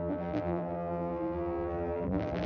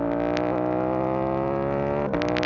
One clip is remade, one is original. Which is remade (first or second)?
first